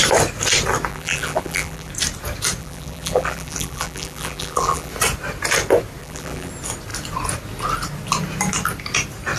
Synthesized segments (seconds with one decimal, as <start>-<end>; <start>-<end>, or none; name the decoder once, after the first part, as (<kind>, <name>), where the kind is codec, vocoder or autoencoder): 0.9-1.9 (vocoder, BigVGAN v2); 2.6-4.9; 6.0-6.5